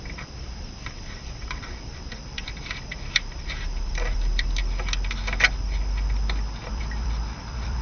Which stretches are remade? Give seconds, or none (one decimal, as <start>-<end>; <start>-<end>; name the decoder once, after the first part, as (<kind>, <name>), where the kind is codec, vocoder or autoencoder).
0.0-4.6 (vocoder, BigVGAN v2); 6.7-7.8